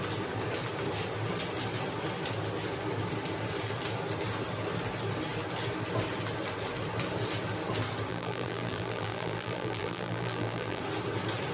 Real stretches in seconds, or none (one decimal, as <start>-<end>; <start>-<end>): 0.0-8.1; 10.8-11.5